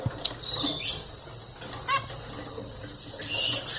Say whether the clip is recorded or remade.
remade